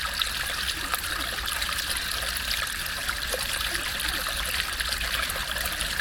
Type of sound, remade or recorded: recorded